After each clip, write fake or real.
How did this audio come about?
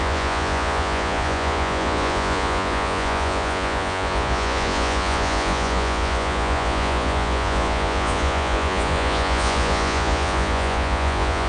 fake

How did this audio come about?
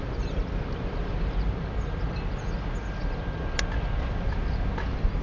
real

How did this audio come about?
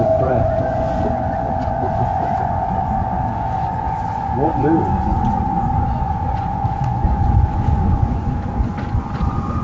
fake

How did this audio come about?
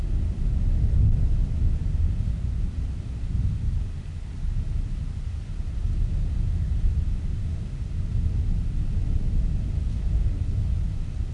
real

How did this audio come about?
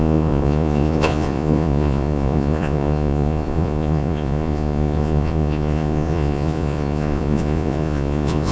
fake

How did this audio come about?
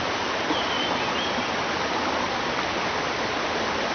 real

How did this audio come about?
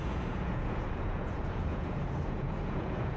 fake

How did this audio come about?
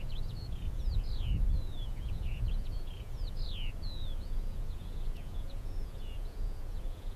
fake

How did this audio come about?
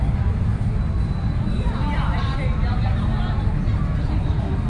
real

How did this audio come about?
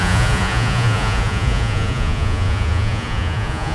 fake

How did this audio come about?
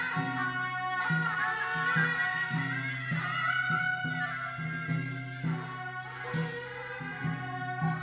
real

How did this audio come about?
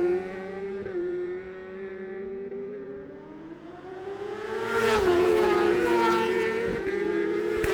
fake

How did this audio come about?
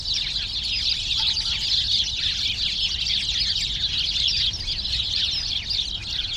real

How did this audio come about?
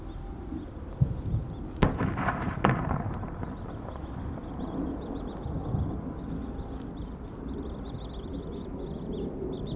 real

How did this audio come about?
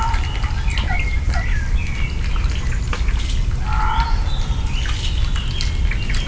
real